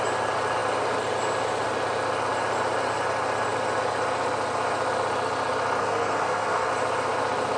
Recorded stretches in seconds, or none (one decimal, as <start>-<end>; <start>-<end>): 0.0-5.8; 6.7-7.6